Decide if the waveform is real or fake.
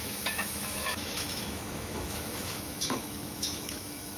fake